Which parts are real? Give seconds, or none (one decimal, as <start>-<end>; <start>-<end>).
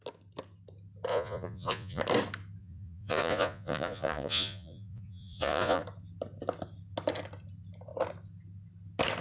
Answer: 0.0-1.1; 2.0-2.6; 5.8-9.2